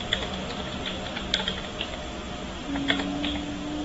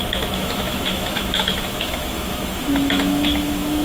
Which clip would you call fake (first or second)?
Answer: second